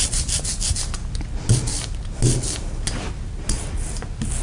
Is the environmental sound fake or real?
real